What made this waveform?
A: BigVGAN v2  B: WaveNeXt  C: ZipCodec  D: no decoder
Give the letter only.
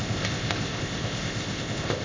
C